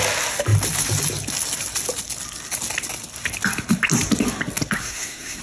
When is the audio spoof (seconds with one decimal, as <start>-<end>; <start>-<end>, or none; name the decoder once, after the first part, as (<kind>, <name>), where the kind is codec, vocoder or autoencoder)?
4.8-5.4 (codec, SNAC)